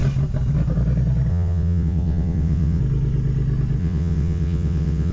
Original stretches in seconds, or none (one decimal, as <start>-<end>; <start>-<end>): 0.0-1.3; 2.8-3.8